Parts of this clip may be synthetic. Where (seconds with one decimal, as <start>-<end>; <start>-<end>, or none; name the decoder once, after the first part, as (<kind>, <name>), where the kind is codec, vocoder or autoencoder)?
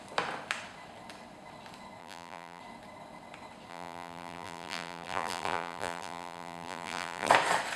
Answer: 2.0-2.6 (vocoder, BigVGAN v2); 3.7-7.3